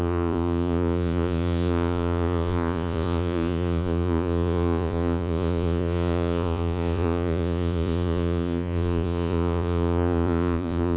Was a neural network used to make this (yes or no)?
yes